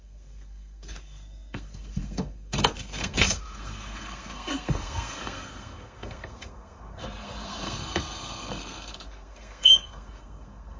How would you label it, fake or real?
fake